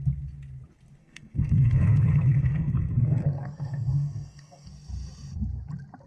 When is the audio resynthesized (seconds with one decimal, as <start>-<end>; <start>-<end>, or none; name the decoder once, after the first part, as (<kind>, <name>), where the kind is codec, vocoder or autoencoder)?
1.0-4.7 (codec, SNAC)